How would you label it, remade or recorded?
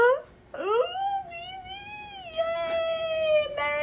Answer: recorded